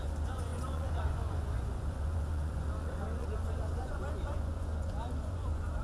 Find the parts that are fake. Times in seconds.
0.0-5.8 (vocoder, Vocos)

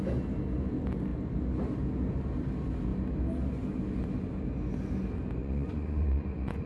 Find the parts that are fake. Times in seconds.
5.4-6.7 (vocoder, Vocos)

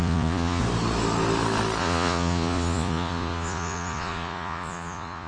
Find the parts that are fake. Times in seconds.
0.0-0.6 (vocoder, Vocos); 1.8-5.3